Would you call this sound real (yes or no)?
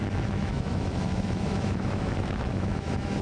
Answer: no